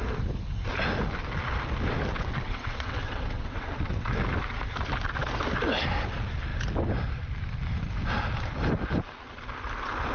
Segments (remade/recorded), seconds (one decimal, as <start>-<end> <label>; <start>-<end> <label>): 0.0-2.1 recorded; 2.1-4.1 remade; 4.1-10.1 recorded